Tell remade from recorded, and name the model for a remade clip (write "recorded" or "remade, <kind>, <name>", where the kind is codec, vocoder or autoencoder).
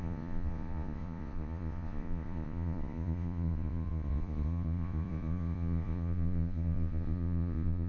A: remade, vocoder, Vocos